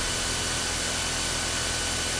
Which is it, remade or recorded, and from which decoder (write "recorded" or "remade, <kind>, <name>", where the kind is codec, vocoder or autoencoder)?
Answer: recorded